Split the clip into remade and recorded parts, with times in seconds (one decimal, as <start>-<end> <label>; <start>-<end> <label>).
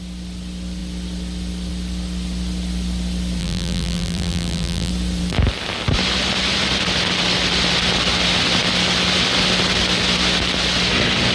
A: 0.0-3.4 recorded; 3.4-4.9 remade; 4.9-11.3 recorded